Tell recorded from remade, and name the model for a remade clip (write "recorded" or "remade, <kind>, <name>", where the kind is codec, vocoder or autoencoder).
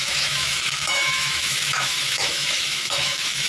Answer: remade, autoencoder, DAC-VAE